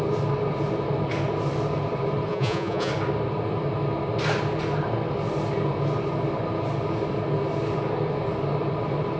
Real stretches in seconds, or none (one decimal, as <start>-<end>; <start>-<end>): 0.0-2.3; 2.9-9.2